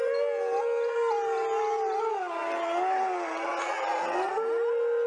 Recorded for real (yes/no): yes